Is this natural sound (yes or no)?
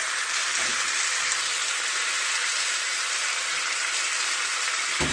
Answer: yes